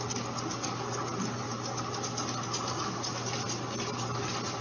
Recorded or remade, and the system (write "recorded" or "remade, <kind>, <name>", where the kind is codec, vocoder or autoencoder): recorded